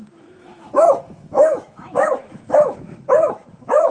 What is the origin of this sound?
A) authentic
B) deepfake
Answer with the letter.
B